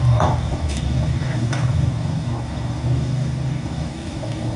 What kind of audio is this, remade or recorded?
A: remade